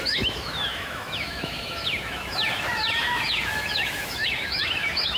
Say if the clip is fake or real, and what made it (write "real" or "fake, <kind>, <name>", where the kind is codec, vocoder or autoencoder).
fake, autoencoder, DAC-VAE